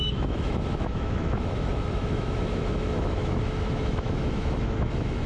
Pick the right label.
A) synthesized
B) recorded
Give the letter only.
A